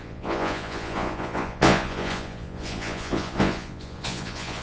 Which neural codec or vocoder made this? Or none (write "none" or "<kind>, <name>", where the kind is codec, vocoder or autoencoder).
vocoder, Vocos